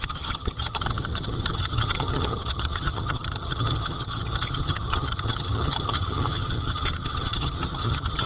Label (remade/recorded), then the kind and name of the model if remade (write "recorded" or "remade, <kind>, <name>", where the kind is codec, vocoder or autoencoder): remade, vocoder, HiFi-GAN